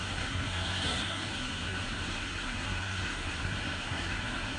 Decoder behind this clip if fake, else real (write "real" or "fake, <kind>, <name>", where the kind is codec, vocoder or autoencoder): fake, codec, SNAC